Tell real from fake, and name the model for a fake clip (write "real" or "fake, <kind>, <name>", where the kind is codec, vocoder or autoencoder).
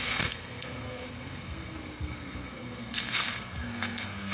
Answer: fake, codec, SNAC